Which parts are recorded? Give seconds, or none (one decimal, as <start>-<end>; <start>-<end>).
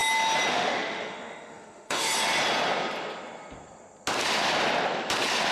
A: 0.0-0.5; 2.1-5.5